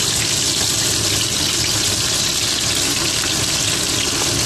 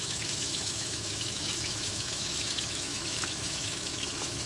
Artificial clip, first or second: second